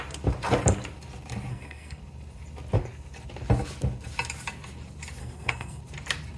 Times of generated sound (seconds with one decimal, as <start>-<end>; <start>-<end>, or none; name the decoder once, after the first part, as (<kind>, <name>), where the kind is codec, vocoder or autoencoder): 1.5-2.0 (codec, SNAC); 5.2-5.8